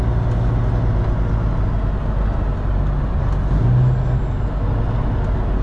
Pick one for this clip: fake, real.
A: real